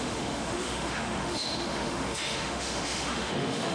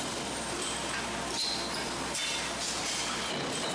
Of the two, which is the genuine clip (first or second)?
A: second